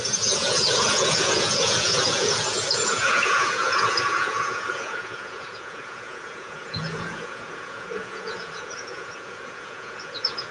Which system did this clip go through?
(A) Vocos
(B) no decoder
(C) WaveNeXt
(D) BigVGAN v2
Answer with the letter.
A